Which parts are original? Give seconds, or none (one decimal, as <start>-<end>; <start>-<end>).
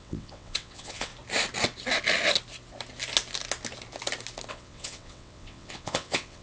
1.1-4.5